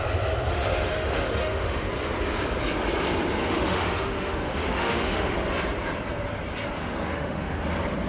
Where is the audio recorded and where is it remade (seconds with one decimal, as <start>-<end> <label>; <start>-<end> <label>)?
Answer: 0.0-0.5 recorded; 0.5-1.9 remade; 1.9-3.4 recorded; 3.4-5.3 remade; 5.3-6.8 recorded; 6.8-7.6 remade; 7.6-8.1 recorded